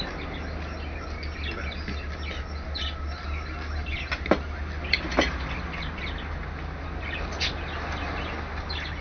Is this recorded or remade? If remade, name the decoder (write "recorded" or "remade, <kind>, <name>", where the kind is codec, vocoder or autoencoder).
recorded